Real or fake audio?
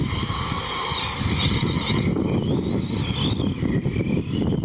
real